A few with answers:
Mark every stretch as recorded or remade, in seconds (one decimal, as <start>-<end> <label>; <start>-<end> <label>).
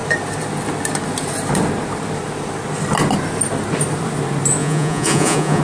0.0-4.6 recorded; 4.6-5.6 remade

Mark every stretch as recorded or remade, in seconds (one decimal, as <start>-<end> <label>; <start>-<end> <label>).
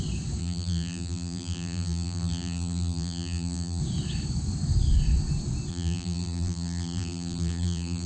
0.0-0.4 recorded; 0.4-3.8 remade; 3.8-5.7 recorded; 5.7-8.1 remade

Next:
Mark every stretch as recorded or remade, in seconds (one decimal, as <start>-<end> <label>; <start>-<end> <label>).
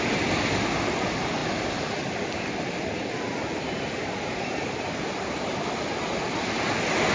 0.0-7.1 recorded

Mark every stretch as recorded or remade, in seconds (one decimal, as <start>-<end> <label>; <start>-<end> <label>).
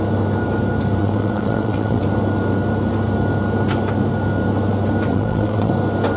0.0-1.0 recorded; 1.0-2.0 remade; 2.0-5.1 recorded; 5.1-5.7 remade; 5.7-6.2 recorded